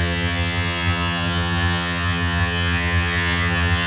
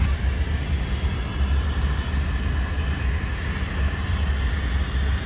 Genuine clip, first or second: second